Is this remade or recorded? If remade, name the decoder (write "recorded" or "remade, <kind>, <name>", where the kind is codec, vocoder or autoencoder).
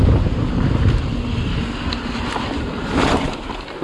recorded